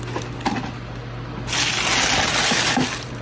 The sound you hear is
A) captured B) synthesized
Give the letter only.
A